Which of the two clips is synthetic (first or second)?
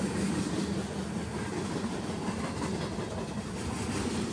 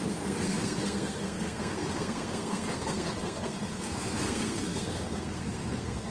second